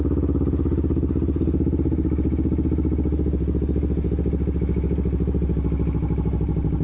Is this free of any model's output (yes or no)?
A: yes